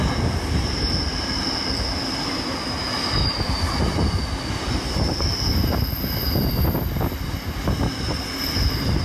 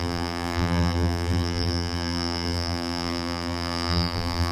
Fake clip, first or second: second